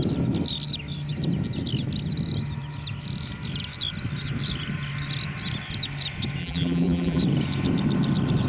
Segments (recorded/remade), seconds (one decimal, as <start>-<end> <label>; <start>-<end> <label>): 0.0-6.4 recorded; 6.4-7.2 remade; 7.2-8.5 recorded

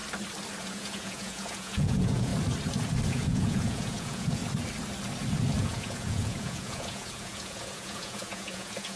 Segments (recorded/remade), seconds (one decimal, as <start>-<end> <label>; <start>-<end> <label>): 0.0-0.6 recorded; 0.6-2.3 remade; 2.3-3.1 recorded; 3.1-4.4 remade; 4.4-5.6 recorded; 5.6-9.0 remade

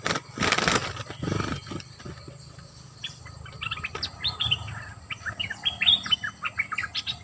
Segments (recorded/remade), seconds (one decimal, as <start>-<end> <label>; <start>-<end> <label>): 0.0-7.2 recorded

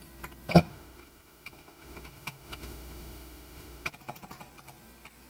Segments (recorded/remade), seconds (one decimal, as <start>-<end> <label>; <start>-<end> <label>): 0.0-0.7 recorded; 0.7-3.9 remade; 3.9-5.3 recorded